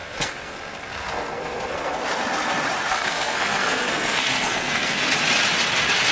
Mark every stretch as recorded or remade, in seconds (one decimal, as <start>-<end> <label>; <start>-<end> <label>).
0.0-2.0 remade; 2.0-2.9 recorded; 2.9-5.0 remade; 5.0-6.1 recorded